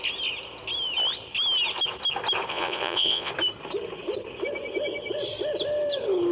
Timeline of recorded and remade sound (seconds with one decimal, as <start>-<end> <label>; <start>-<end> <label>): 0.0-2.5 recorded; 2.5-3.3 remade; 3.3-6.3 recorded